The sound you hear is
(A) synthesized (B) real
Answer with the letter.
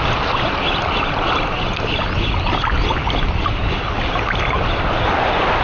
B